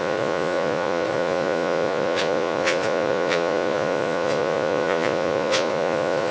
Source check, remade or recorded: remade